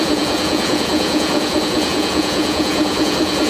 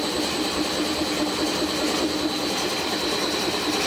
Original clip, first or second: second